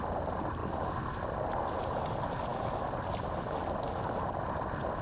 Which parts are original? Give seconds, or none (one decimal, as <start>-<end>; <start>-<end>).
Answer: 0.0-5.0